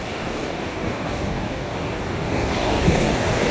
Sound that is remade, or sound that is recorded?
remade